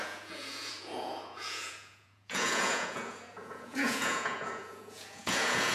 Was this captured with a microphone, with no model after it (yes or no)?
no